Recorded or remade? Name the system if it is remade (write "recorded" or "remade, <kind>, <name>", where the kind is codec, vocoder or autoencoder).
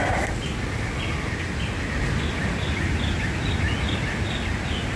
recorded